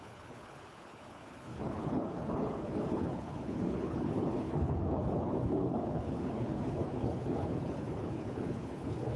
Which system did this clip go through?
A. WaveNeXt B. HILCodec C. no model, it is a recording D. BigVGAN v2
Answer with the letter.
B